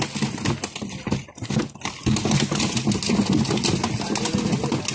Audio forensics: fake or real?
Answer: real